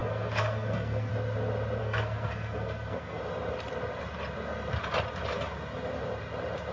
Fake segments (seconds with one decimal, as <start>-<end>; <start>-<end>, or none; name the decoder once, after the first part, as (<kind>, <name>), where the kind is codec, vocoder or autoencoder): 0.0-1.1 (codec, SNAC); 1.8-3.2